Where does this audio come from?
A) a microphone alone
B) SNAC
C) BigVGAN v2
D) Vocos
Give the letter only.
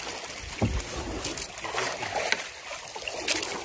A